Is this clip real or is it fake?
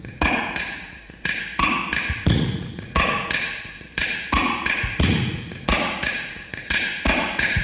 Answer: fake